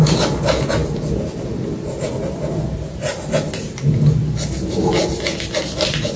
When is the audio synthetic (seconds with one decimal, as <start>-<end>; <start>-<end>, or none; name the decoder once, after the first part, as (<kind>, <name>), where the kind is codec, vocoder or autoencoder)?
none